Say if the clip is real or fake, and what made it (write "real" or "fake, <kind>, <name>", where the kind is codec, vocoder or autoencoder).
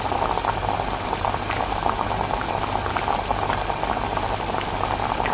real